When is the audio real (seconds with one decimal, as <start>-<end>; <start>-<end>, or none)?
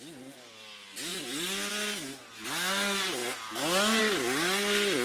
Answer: 0.0-1.1; 1.7-5.0